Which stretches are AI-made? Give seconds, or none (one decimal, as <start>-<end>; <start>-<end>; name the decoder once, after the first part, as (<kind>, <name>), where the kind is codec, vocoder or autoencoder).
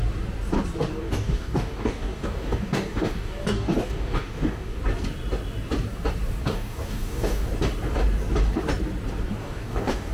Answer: 0.9-4.8 (codec, DAC); 6.4-7.5; 9.4-10.1